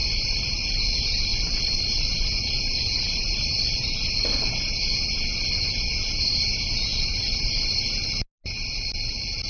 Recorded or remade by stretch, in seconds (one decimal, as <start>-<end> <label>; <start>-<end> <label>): 0.0-0.6 remade; 0.6-1.3 recorded; 1.3-4.1 remade; 4.1-6.9 recorded; 6.9-7.4 remade; 7.4-9.5 recorded